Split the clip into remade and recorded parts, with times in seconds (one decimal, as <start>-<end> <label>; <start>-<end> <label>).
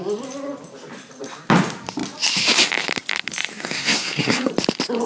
0.0-3.5 recorded; 3.5-4.5 remade; 4.5-5.1 recorded